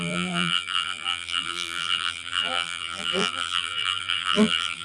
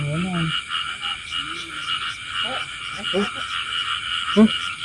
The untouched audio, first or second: second